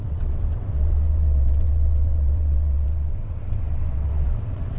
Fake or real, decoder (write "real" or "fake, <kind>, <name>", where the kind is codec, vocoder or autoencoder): fake, vocoder, WaveNeXt